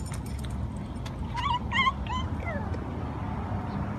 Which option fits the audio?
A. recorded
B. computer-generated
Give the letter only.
A